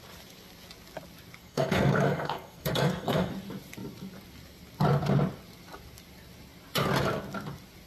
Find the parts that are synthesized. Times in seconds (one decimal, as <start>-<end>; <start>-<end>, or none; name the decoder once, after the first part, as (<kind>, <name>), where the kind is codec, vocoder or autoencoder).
1.4-3.3 (codec, SNAC)